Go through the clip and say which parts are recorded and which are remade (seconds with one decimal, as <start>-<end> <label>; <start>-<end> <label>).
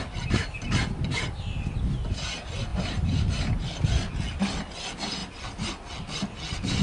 0.0-2.7 recorded; 2.7-3.4 remade; 3.4-5.2 recorded; 5.2-5.7 remade; 5.7-6.8 recorded